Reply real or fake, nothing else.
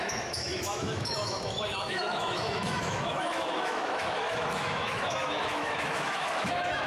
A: fake